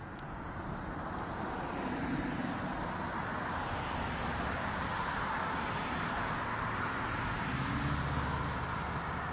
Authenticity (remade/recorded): recorded